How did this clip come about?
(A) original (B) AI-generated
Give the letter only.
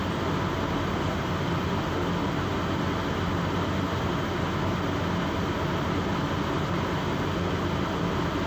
A